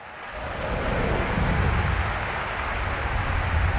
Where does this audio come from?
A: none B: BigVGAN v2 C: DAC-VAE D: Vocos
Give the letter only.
A